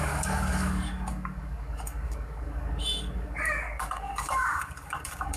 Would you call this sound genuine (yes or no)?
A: no